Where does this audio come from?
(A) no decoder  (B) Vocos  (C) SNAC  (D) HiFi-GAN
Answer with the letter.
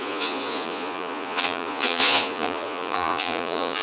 B